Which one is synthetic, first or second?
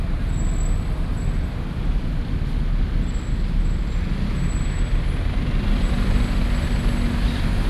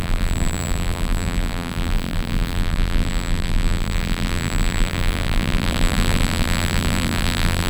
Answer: second